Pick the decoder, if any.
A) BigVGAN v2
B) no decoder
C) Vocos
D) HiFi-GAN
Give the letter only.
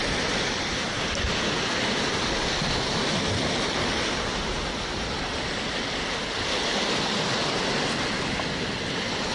B